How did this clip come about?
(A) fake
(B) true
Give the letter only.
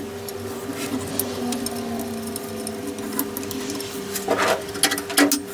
B